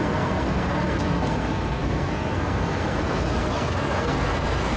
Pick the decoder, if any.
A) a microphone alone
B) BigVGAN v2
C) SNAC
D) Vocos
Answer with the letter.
C